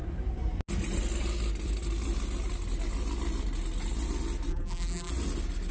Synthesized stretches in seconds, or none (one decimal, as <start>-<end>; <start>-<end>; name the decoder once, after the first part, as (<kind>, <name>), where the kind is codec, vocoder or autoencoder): 4.5-5.1 (vocoder, BigVGAN v2)